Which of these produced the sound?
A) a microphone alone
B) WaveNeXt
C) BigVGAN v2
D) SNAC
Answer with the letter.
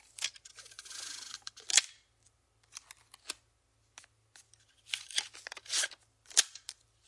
A